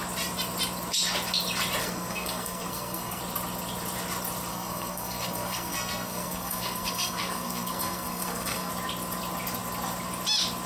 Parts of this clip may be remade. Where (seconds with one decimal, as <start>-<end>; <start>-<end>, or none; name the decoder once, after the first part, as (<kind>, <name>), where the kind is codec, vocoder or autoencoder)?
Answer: 1.8-3.2 (codec, SNAC); 4.5-8.7